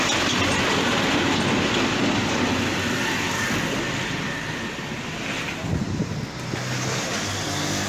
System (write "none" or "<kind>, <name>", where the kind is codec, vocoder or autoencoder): none